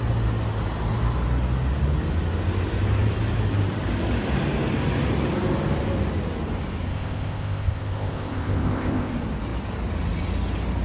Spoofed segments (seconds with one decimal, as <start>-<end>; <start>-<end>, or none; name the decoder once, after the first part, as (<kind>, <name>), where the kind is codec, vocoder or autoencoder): 6.9-9.1 (codec, ZipCodec)